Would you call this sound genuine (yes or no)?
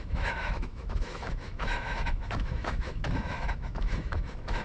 no